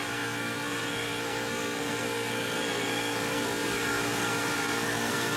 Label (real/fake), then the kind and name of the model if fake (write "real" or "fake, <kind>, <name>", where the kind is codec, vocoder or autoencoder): fake, codec, SNAC